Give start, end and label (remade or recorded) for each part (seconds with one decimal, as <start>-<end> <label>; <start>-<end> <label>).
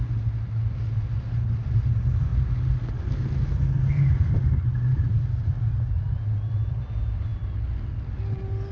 0.0-8.7 recorded